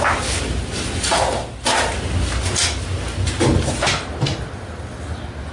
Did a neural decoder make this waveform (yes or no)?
no